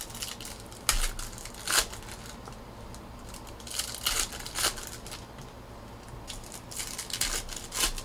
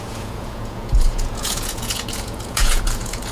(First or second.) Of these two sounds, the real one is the first